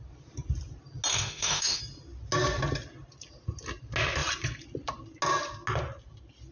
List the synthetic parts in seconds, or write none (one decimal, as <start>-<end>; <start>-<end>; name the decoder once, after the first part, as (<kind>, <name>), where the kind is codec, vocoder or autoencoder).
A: 1.1-1.8 (autoencoder, DAC-VAE)